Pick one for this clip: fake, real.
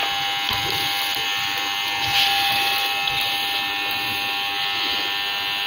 real